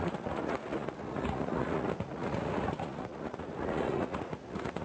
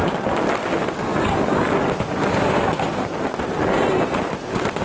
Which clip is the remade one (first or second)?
first